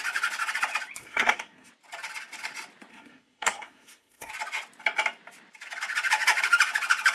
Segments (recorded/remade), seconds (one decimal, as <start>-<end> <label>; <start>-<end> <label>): 0.0-1.0 recorded; 1.0-1.7 remade; 1.7-2.9 recorded; 2.9-4.3 remade; 4.3-7.1 recorded